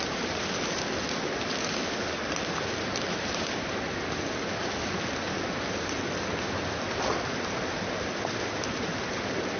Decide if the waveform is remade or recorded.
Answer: recorded